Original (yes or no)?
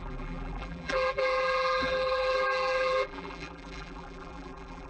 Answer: no